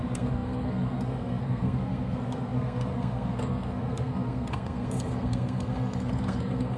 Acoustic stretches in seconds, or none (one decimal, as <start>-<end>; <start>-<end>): none